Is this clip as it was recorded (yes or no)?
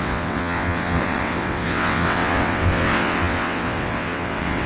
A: no